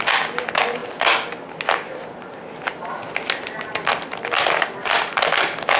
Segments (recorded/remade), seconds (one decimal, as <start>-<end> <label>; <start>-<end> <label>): 0.0-5.8 recorded